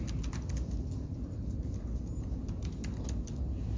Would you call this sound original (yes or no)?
yes